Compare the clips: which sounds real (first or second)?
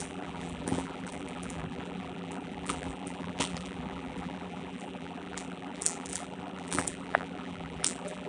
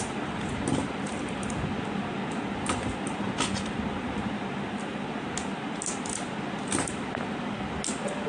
second